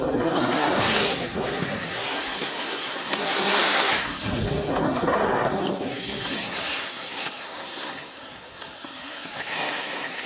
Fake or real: fake